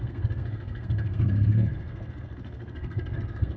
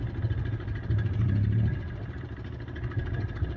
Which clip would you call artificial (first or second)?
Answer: first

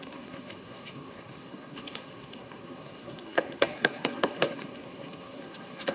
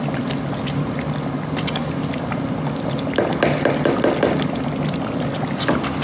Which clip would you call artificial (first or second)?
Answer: first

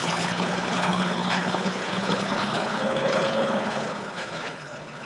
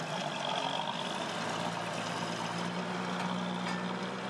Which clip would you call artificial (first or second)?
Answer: first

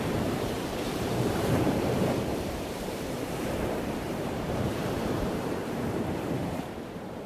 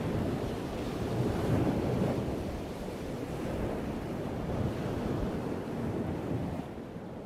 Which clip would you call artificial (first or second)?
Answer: first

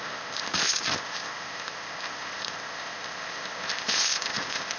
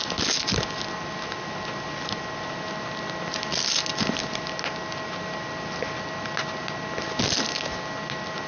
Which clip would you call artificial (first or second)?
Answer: first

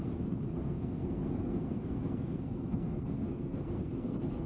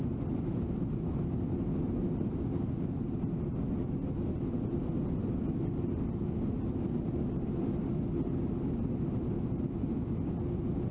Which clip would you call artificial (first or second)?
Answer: first